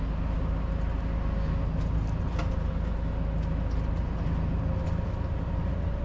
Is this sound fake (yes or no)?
no